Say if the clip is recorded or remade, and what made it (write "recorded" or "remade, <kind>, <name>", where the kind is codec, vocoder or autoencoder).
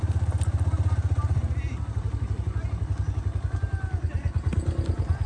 recorded